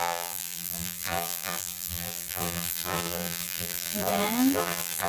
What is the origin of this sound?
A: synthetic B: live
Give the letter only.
A